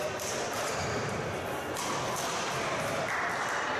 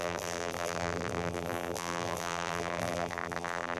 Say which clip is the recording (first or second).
first